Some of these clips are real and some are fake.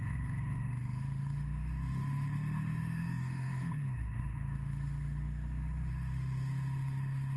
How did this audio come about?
fake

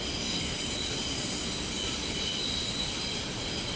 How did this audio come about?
real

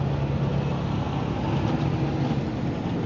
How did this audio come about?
real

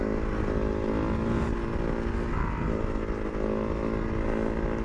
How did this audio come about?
real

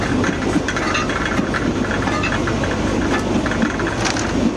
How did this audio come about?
real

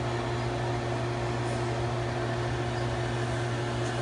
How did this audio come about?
real